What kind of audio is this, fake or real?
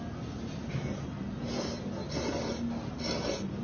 real